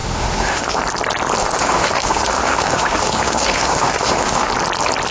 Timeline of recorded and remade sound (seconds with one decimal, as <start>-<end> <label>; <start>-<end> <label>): 0.0-0.8 remade; 0.8-1.4 recorded; 1.4-4.5 remade; 4.5-5.1 recorded